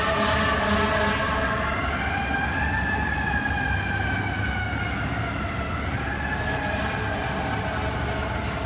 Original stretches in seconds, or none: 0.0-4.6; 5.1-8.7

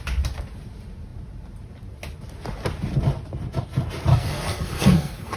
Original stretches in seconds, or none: 0.0-4.1

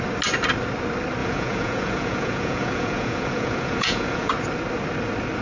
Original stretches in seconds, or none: 0.0-1.2; 4.3-5.4

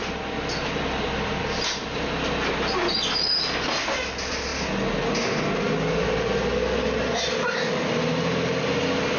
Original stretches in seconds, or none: 2.0-9.2

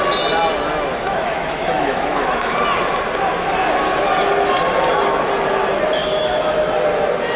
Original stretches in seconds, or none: 0.0-0.9; 2.5-6.0; 6.7-7.4

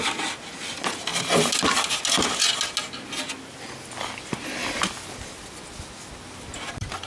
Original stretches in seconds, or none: 0.0-7.1

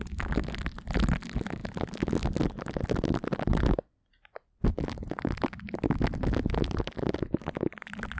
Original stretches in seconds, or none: 1.6-2.7